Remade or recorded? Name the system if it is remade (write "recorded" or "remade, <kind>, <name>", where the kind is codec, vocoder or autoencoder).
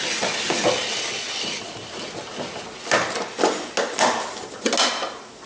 recorded